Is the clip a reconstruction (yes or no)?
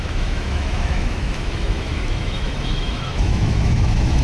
yes